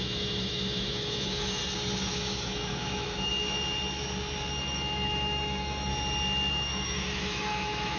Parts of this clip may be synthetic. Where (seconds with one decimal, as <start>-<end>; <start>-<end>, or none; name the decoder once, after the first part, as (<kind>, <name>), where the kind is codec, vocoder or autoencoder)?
0.0-1.6 (autoencoder, DAC-VAE); 2.1-3.3; 4.5-5.9; 6.5-8.0